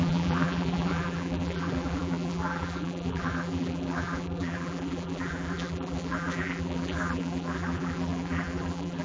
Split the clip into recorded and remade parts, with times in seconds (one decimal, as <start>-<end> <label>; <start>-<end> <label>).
0.0-9.0 remade